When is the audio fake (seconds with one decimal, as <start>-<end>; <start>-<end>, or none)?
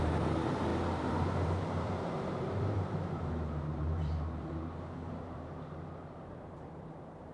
0.0-7.3